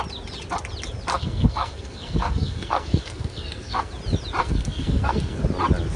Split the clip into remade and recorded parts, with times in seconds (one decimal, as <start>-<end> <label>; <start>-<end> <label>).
0.0-1.1 recorded; 1.1-3.9 remade; 3.9-4.4 recorded; 4.4-5.4 remade; 5.4-6.0 recorded